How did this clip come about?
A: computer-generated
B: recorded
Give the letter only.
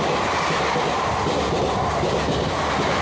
B